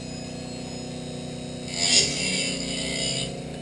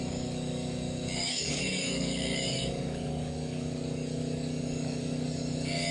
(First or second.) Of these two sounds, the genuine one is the first